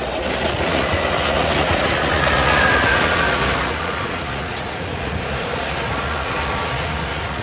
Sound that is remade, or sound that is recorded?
remade